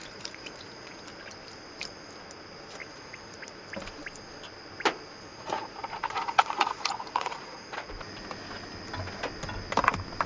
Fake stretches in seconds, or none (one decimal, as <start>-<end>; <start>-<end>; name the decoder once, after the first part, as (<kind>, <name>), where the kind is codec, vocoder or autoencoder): 0.0-1.0 (vocoder, Vocos); 2.8-3.6; 5.3-7.9